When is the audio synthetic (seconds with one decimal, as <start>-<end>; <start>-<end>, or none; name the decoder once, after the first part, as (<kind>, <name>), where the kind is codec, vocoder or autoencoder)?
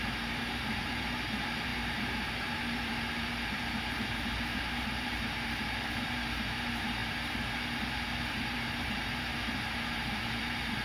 0.0-10.8 (vocoder, BigVGAN v2)